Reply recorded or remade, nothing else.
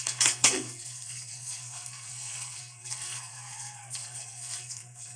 remade